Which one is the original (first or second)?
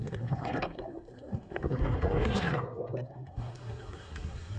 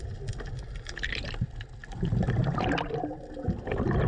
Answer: second